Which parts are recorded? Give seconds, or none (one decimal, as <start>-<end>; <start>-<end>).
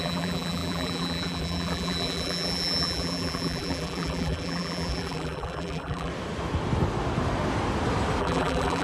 6.1-8.2